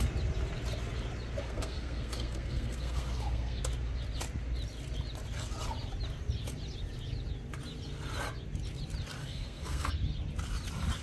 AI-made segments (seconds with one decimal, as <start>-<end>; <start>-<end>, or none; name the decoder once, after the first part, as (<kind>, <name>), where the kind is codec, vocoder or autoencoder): 1.4-3.6 (codec, SNAC); 9.2-9.9